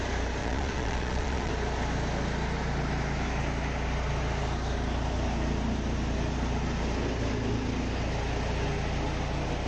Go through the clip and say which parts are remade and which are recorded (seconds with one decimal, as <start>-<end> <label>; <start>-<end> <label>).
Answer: 0.0-0.4 recorded; 0.4-1.5 remade; 1.5-9.7 recorded

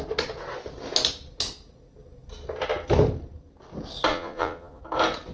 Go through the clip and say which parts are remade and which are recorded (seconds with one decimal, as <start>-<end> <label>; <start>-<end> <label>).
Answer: 0.0-4.1 recorded; 4.1-4.8 remade; 4.8-5.3 recorded

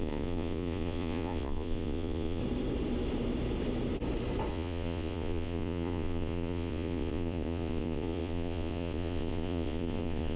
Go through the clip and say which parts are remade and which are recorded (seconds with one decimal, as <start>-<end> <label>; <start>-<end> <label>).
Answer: 0.0-2.4 remade; 2.4-4.5 recorded; 4.5-10.4 remade

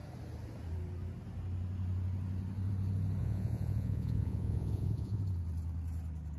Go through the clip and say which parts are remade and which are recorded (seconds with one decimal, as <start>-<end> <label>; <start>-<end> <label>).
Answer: 0.0-3.2 recorded; 3.2-5.2 remade; 5.2-6.4 recorded